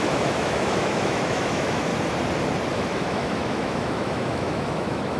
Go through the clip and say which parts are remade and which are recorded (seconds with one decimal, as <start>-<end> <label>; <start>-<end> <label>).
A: 0.0-1.9 remade; 1.9-2.7 recorded; 2.7-5.2 remade